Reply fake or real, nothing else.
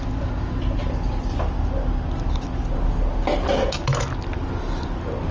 real